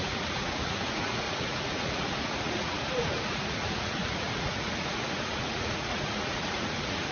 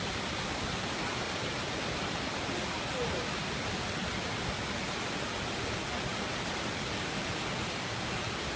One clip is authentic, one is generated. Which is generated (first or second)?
first